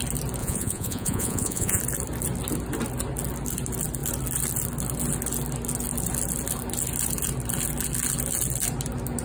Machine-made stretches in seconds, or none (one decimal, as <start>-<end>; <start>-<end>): 0.4-1.8